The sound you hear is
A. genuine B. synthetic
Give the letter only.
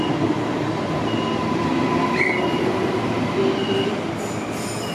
A